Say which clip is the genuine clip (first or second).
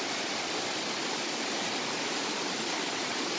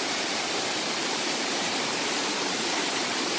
first